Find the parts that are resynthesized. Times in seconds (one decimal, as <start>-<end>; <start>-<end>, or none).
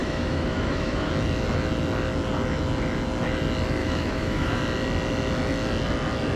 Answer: 0.0-1.1; 3.8-4.6